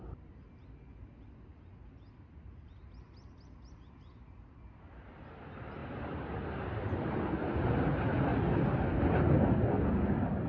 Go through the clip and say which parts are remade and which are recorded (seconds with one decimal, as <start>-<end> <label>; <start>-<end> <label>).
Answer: 0.0-10.5 recorded